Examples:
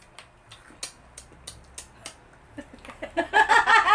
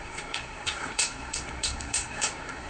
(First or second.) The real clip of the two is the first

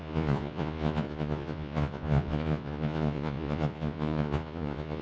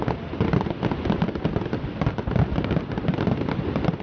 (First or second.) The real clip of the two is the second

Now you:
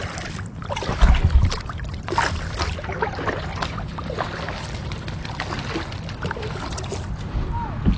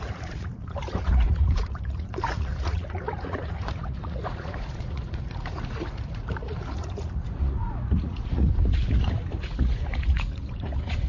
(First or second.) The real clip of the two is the first